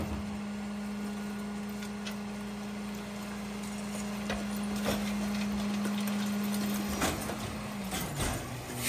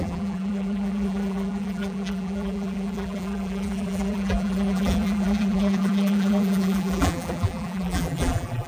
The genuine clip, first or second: first